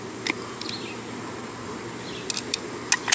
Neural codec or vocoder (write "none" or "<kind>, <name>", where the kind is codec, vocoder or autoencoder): none